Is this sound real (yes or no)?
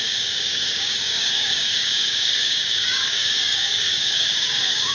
no